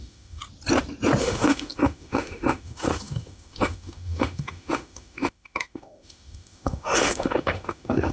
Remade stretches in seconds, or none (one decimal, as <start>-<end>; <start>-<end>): 0.0-0.4; 1.2-8.1